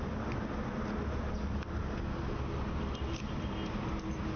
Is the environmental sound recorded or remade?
recorded